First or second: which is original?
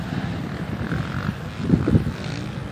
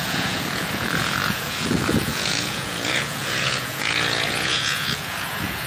first